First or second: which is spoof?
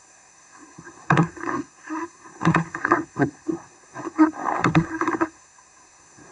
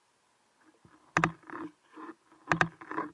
first